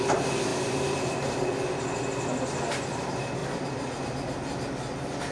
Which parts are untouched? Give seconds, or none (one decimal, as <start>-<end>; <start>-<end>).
0.0-5.3